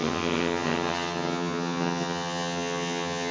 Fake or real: fake